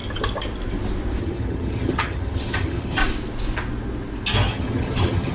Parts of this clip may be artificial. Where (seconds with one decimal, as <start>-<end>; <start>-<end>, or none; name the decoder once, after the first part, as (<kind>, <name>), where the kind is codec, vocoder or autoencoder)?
1.2-3.0 (vocoder, HiFi-GAN); 4.5-5.3